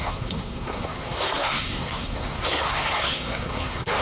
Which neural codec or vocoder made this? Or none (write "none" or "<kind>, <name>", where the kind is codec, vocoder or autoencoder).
codec, SNAC